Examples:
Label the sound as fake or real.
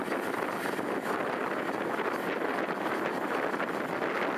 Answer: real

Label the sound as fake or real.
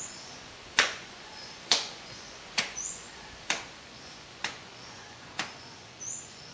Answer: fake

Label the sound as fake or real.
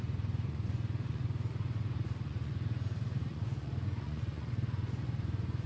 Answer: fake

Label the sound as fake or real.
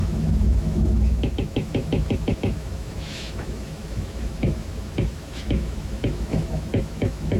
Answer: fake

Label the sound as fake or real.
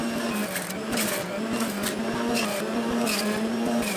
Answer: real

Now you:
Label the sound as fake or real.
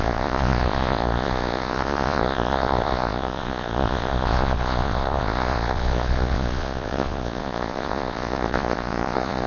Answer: fake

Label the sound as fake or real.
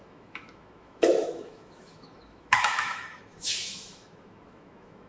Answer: fake